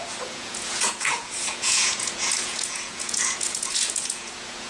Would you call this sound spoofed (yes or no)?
yes